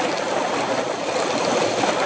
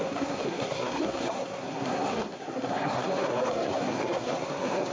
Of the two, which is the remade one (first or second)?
second